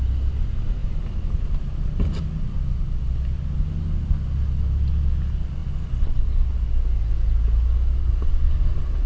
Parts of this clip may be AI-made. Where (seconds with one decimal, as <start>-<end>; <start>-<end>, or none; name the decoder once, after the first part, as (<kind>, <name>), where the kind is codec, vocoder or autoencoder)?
0.8-2.2 (vocoder, BigVGAN v2)